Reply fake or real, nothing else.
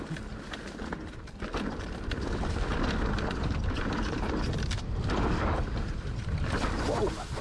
fake